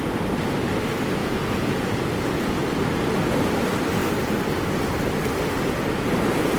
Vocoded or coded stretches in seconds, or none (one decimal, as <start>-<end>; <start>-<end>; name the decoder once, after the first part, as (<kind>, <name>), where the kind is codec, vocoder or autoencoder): 1.2-2.7 (vocoder, Vocos)